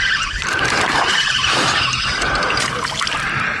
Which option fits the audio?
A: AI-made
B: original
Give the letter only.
A